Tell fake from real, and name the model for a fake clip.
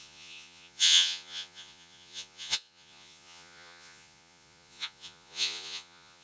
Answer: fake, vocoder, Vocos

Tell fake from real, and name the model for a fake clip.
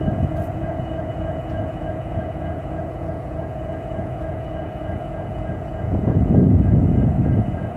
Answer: fake, vocoder, Vocos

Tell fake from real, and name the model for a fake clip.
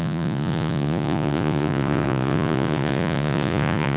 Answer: fake, vocoder, Vocos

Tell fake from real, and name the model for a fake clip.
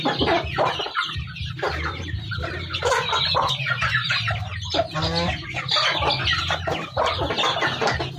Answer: real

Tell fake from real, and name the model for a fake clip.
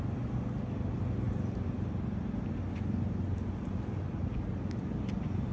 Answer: real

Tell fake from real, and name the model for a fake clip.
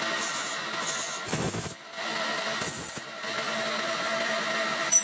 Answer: real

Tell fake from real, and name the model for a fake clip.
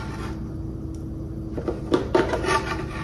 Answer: real